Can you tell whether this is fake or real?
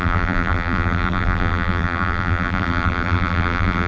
fake